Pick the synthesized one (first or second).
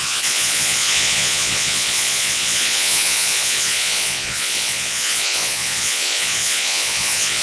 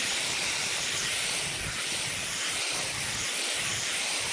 first